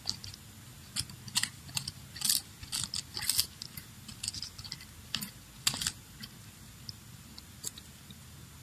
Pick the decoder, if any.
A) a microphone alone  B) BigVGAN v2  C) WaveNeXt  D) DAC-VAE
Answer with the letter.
A